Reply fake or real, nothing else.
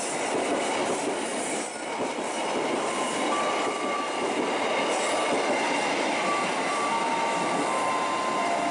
real